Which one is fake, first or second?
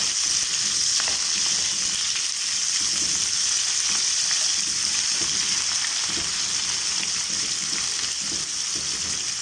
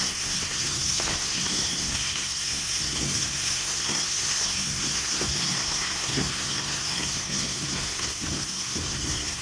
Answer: second